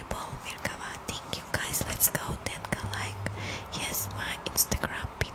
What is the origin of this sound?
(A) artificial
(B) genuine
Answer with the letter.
B